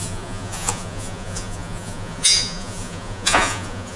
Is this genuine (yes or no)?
no